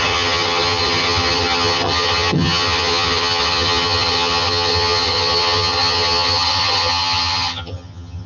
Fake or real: fake